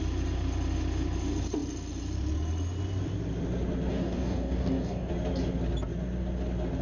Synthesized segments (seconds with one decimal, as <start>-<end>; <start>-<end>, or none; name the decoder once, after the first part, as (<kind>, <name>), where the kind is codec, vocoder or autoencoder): 3.9-5.1 (codec, DAC)